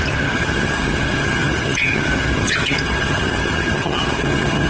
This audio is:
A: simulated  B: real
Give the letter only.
A